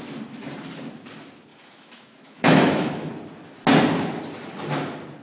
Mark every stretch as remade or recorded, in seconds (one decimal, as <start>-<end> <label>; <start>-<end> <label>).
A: 0.0-1.5 recorded; 1.5-3.1 remade; 3.1-5.2 recorded